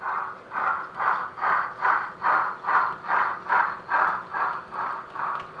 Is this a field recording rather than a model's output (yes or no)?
yes